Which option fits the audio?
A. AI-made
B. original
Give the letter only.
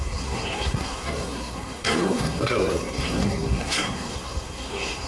A